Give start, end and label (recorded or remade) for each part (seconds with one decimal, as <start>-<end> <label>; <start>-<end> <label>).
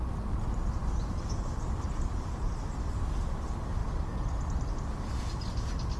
0.0-6.0 recorded